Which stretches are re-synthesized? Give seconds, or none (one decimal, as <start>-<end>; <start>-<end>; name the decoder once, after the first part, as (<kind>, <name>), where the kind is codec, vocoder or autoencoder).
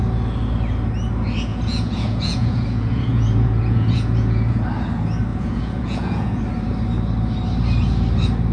1.5-4.6 (vocoder, Vocos); 5.3-6.4